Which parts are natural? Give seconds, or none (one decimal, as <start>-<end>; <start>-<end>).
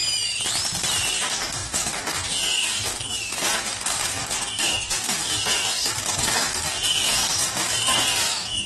0.0-1.1